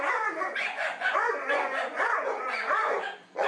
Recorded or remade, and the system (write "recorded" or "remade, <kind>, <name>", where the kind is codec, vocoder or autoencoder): remade, vocoder, Vocos